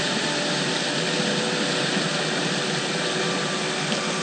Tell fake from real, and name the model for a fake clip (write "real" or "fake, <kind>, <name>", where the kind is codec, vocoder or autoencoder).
real